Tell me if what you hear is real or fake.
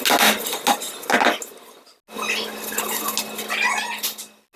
real